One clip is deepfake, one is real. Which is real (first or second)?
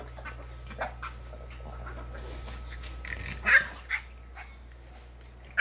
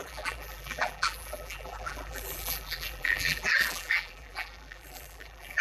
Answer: first